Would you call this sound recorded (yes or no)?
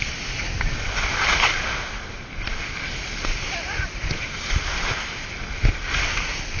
yes